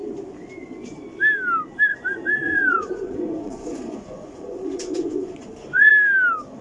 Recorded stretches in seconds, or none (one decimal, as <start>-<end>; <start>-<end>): 0.0-1.9; 5.9-6.6